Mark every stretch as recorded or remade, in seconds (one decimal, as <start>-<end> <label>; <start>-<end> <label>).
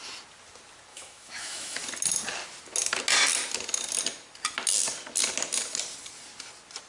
0.0-0.9 recorded; 0.9-1.8 remade; 1.8-6.9 recorded